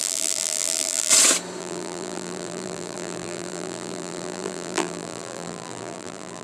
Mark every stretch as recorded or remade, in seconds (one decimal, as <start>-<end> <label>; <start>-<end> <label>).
0.0-1.1 remade; 1.1-1.6 recorded; 1.6-6.4 remade